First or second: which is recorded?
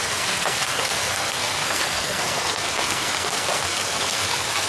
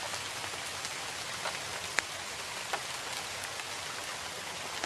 second